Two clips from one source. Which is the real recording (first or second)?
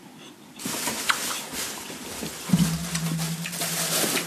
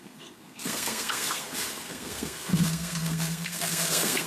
first